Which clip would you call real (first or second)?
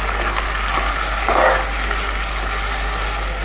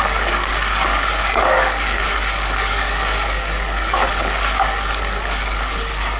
first